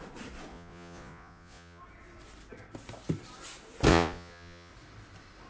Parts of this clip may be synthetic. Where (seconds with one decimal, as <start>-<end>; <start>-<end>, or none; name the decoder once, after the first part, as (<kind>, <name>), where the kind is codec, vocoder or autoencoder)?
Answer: 0.5-1.8 (vocoder, Vocos); 3.9-4.7